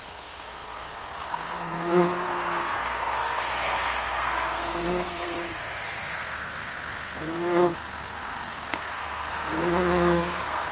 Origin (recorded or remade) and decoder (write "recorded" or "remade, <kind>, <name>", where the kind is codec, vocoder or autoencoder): remade, codec, SNAC